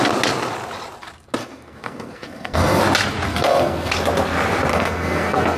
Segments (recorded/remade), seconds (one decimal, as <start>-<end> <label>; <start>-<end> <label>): 0.0-1.4 recorded; 1.4-2.8 remade; 2.8-3.3 recorded; 3.3-3.9 remade; 3.9-4.7 recorded; 4.7-5.6 remade